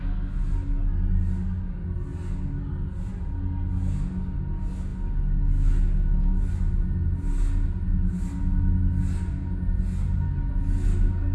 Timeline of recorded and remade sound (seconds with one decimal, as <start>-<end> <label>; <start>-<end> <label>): 0.0-11.3 recorded